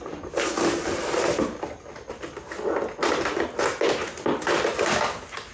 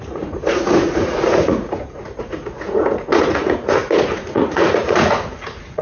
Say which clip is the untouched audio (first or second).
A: first